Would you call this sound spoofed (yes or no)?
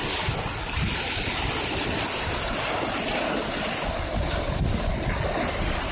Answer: no